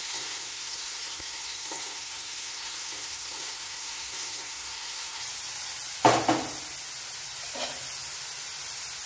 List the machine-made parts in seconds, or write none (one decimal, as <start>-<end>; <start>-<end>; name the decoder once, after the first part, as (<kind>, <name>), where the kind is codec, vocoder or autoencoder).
0.0-5.2 (codec, SNAC)